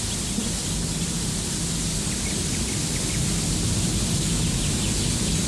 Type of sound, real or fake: fake